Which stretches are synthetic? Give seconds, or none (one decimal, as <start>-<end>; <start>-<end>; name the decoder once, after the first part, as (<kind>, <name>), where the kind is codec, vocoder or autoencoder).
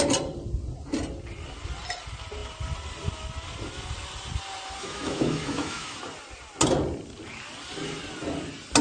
4.8-6.0 (autoencoder, DAC-VAE)